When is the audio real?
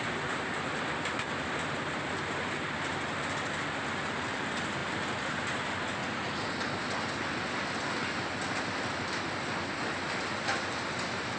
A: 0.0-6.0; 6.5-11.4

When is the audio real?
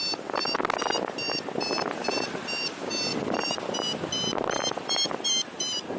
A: 0.0-6.0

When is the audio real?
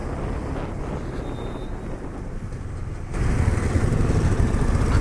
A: 0.0-5.0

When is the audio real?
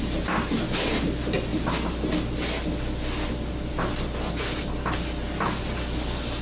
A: 0.0-6.4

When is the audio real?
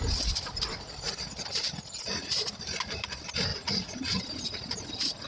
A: 0.0-3.5; 4.2-5.3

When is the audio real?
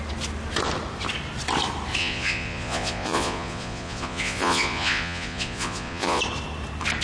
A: 0.0-2.0; 6.2-7.0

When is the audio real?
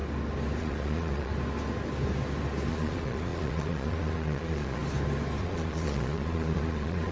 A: 0.0-0.6; 1.3-2.7; 4.8-5.4